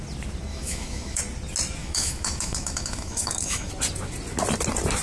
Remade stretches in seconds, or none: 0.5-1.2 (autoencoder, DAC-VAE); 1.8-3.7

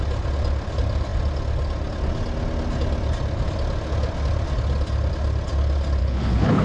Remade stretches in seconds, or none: 6.0-6.6 (codec, HILCodec)

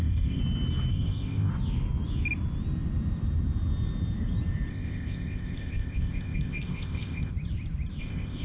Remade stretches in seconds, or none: 0.0-0.4 (codec, ZipCodec); 0.9-1.5; 4.7-7.3; 8.0-8.4

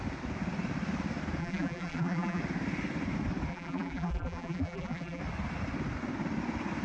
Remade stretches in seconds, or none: 1.4-2.4 (vocoder, BigVGAN v2); 3.5-5.2

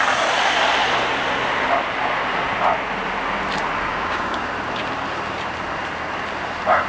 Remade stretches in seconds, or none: 3.9-4.5 (codec, DAC)

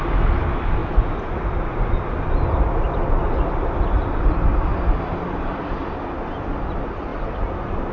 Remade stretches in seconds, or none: none

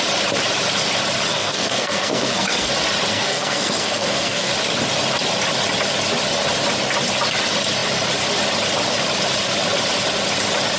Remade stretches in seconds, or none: 1.3-2.7 (codec, SNAC); 3.1-4.5

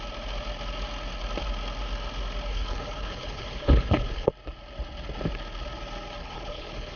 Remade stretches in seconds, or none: 2.5-4.3 (codec, HILCodec); 6.2-7.0